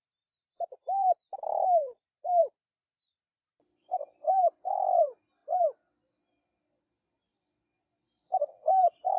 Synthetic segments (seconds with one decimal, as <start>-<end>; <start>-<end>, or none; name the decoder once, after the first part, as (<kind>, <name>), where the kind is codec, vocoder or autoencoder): 0.0-5.4 (vocoder, BigVGAN v2); 7.0-9.2